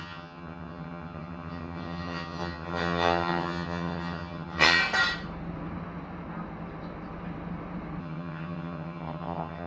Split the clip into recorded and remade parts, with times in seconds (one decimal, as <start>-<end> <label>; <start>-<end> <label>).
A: 0.0-4.8 remade; 4.8-8.0 recorded; 8.0-9.7 remade